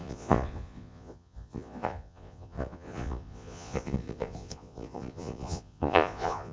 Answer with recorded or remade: remade